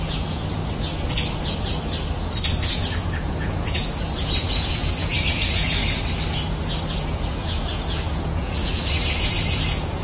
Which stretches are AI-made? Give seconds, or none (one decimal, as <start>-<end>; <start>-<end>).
0.0-0.6; 2.7-5.8; 6.9-10.0